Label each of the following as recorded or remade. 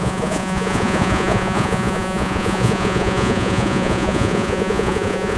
remade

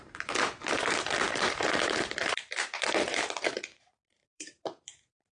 remade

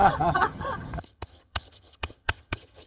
remade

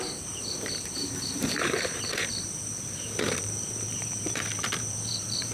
remade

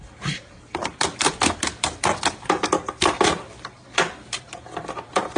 remade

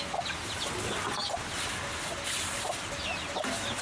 recorded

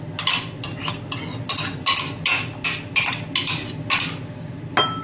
recorded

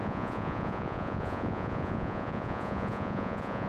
remade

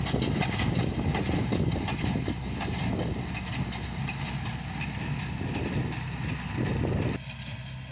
recorded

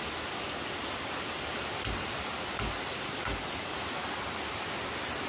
recorded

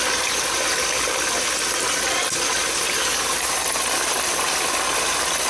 recorded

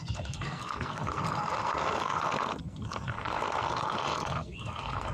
remade